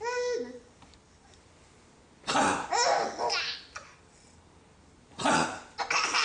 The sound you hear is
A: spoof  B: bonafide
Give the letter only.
B